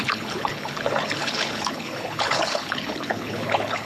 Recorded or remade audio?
remade